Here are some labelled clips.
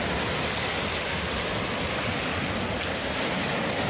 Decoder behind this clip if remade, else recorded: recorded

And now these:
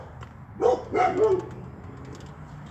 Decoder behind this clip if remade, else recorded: recorded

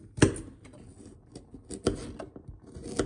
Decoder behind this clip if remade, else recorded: recorded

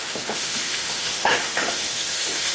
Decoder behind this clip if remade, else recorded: remade, autoencoder, DAC-VAE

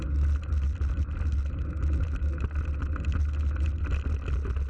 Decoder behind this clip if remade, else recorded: recorded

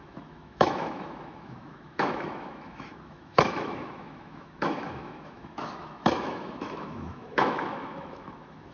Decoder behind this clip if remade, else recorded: remade, autoencoder, DAC-VAE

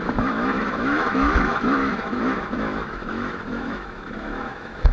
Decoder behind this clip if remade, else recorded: remade, autoencoder, DAC-VAE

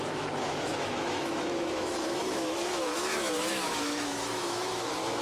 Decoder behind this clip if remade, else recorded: remade, autoencoder, DAC-VAE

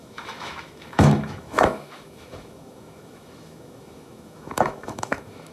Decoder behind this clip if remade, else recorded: remade, autoencoder, DAC-VAE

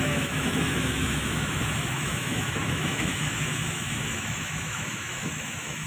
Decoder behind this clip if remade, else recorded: remade, autoencoder, DAC-VAE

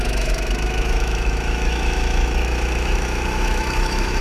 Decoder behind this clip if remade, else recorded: remade, autoencoder, DAC-VAE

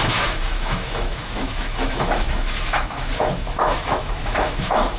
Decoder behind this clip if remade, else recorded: remade, autoencoder, DAC-VAE